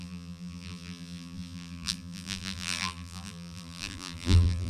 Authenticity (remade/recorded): remade